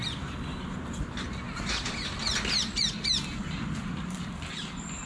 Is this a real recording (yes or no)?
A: yes